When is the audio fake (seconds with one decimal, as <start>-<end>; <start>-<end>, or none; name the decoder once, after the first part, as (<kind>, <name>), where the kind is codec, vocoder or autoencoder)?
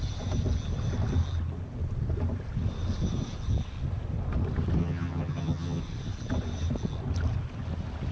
4.8-5.8 (vocoder, HiFi-GAN)